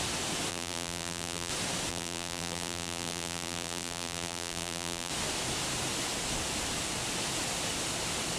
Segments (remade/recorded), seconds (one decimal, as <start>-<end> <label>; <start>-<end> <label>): 0.0-0.5 recorded; 0.5-1.5 remade; 1.5-1.9 recorded; 1.9-5.1 remade; 5.1-8.4 recorded